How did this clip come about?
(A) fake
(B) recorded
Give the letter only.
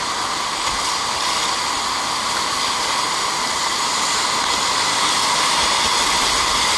B